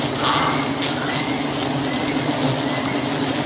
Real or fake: real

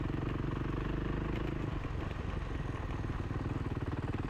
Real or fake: real